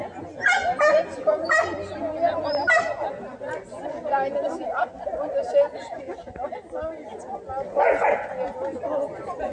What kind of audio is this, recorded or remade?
recorded